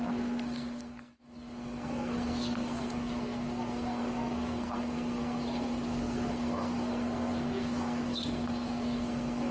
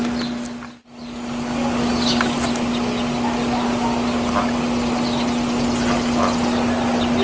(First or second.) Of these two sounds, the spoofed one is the first